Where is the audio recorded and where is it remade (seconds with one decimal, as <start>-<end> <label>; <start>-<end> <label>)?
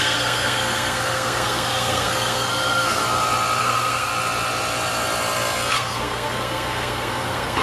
0.0-3.0 remade; 3.0-3.6 recorded; 3.6-4.1 remade; 4.1-5.7 recorded; 5.7-7.6 remade